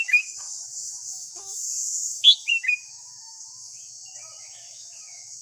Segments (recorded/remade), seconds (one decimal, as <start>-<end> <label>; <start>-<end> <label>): 0.0-5.4 remade